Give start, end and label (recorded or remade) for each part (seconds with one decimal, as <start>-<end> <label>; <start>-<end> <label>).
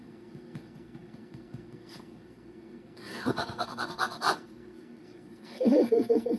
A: 0.0-6.4 remade